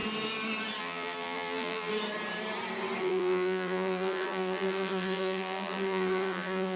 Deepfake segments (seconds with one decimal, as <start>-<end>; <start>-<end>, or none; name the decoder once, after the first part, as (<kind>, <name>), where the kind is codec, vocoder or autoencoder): 0.8-1.9 (vocoder, BigVGAN v2); 3.0-6.8